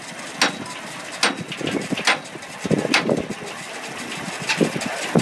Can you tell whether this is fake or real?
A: real